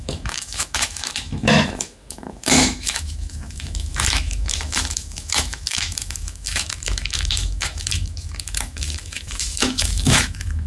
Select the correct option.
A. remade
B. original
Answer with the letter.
A